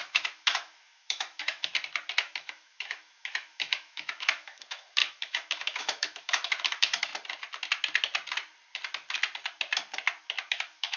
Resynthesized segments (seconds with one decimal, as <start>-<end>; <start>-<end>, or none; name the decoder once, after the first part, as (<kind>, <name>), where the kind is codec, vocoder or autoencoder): 0.0-1.7 (autoencoder, DAC-VAE); 2.2-7.1; 10.5-11.0